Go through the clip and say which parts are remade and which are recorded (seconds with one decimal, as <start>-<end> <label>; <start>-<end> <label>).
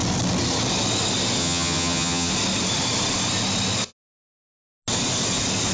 0.0-1.4 recorded; 1.4-2.3 remade; 2.3-5.7 recorded